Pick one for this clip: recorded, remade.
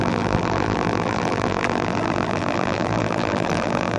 remade